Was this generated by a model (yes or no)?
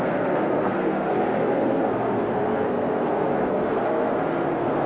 yes